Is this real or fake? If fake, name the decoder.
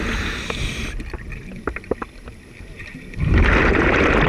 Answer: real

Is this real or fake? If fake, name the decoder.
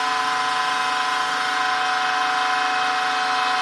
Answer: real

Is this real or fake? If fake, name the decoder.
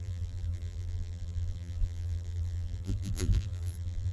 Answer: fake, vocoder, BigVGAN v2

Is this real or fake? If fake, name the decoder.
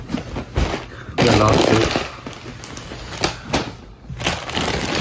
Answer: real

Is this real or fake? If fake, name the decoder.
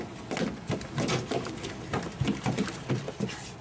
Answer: real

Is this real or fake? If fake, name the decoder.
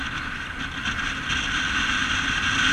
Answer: real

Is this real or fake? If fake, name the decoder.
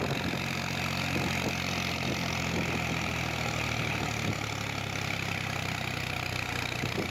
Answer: real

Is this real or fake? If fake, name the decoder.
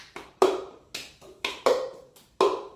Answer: fake, vocoder, BigVGAN v2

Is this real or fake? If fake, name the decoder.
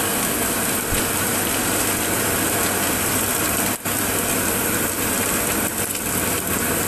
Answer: fake, vocoder, BigVGAN v2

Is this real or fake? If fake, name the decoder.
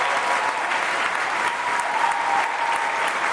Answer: real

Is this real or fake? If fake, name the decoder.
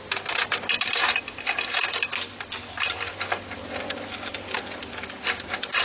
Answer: real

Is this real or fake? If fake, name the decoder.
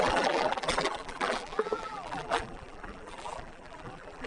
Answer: fake, vocoder, BigVGAN v2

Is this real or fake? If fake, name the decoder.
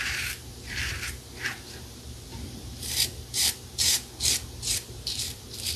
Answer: fake, vocoder, BigVGAN v2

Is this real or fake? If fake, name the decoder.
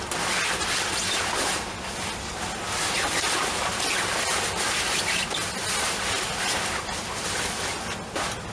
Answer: real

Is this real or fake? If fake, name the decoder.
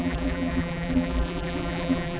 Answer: fake, vocoder, BigVGAN v2